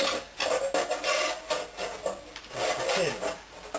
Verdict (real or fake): real